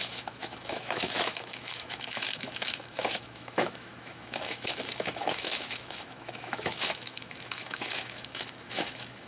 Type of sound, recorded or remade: remade